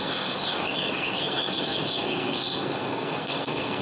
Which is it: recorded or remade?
remade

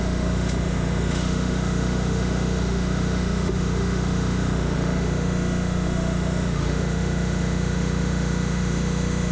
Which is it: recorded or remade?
remade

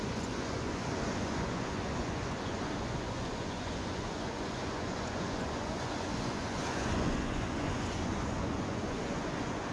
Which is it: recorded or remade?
remade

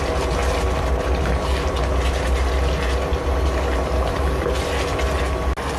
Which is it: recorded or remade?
recorded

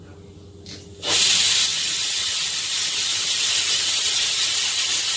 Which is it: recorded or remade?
recorded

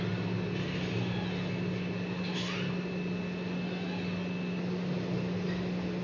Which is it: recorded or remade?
recorded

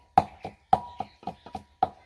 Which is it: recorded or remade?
recorded